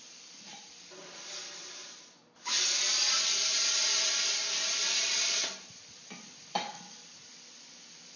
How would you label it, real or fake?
fake